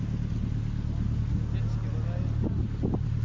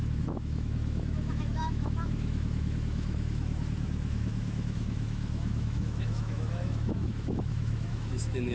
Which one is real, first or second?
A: first